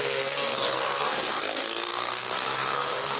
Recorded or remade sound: remade